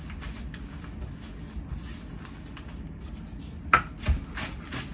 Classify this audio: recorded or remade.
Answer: recorded